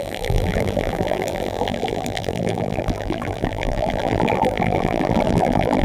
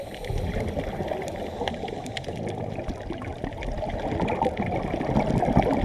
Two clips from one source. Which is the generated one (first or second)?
first